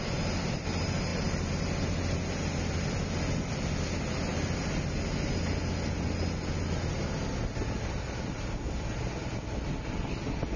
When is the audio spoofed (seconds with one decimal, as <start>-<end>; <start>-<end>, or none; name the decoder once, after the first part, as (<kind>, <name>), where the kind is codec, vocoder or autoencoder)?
none